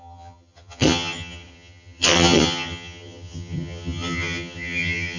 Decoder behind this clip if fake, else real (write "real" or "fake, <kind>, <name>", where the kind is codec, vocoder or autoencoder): fake, vocoder, HiFi-GAN